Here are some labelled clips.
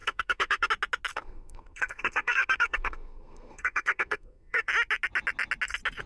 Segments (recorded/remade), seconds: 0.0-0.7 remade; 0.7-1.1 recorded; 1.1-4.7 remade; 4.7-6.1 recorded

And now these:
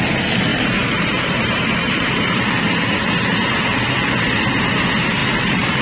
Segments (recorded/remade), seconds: 0.0-0.5 recorded; 0.5-2.6 remade; 2.6-5.2 recorded; 5.2-5.8 remade

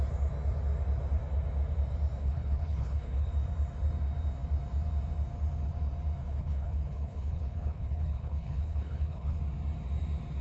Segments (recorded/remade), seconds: 0.0-2.2 recorded; 2.2-3.3 remade; 3.3-6.2 recorded; 6.2-9.4 remade; 9.4-10.4 recorded

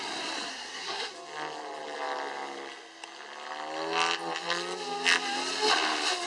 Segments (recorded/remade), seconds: 0.0-0.5 recorded; 0.5-1.1 remade; 1.1-6.3 recorded

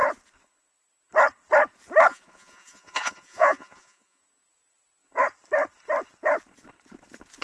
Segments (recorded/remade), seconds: 0.0-2.1 recorded; 2.1-4.2 remade; 4.2-7.4 recorded

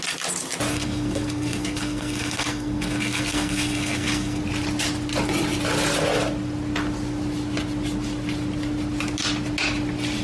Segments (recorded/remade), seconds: 0.0-0.7 recorded; 0.7-4.4 remade; 4.4-10.2 recorded

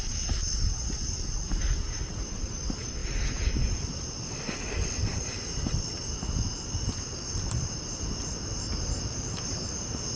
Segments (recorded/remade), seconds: 0.0-10.2 recorded